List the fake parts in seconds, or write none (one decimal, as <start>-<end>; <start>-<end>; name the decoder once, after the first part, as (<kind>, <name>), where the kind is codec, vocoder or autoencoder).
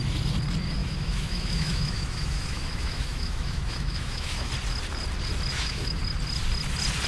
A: 0.8-4.5 (autoencoder, DAC-VAE); 5.5-6.0